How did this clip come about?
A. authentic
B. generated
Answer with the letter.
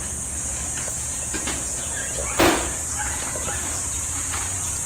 B